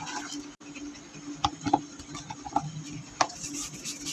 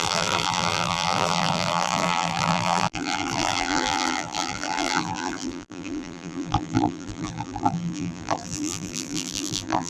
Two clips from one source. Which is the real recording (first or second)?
first